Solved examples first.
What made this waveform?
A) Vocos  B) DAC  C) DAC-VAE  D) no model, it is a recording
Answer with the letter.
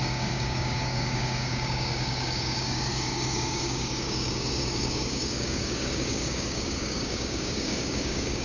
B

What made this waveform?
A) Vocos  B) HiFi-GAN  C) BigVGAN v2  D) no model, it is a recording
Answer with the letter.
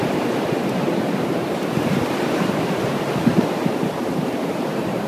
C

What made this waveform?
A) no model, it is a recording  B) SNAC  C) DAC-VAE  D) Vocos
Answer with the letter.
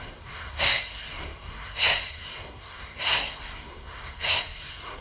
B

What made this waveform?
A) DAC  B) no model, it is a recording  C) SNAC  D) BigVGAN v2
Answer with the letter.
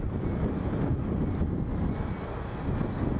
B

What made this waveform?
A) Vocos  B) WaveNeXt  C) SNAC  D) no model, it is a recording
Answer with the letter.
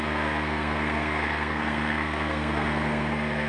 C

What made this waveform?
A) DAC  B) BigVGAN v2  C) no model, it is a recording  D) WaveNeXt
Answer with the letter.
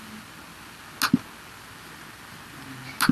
C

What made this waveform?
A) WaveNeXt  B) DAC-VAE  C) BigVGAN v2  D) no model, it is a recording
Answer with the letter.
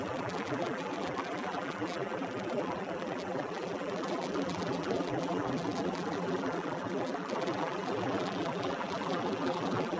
C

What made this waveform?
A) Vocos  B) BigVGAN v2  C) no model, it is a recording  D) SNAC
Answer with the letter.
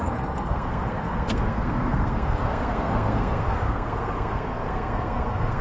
D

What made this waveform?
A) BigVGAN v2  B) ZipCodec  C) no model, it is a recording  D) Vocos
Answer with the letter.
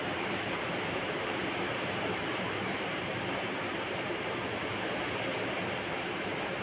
A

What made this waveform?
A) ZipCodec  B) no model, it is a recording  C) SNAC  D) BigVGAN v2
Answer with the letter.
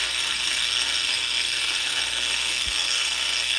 C